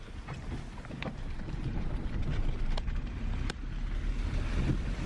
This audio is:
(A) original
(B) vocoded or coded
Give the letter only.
A